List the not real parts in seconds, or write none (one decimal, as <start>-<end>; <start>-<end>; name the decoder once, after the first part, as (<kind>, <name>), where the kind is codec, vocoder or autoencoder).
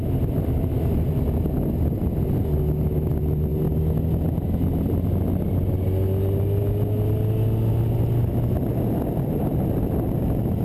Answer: none